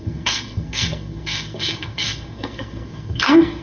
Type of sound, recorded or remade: remade